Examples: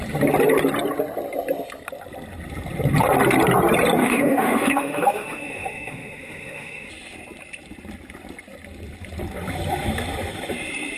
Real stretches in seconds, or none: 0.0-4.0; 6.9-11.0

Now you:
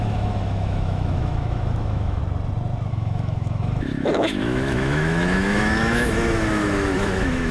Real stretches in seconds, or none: 2.2-2.9